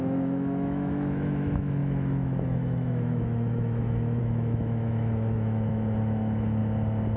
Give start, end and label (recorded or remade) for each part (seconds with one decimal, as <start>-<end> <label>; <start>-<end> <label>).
0.0-6.6 remade; 6.6-7.2 recorded